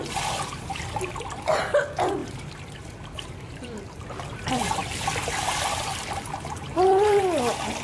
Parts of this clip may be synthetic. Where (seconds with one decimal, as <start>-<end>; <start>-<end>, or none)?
2.2-4.1; 4.8-7.2